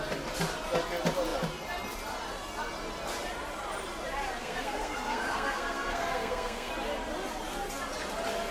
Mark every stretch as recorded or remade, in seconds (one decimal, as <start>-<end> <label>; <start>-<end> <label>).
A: 0.0-4.4 recorded; 4.4-6.7 remade; 6.7-8.5 recorded